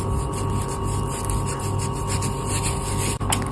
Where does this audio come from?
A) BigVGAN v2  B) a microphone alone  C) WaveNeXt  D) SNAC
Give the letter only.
B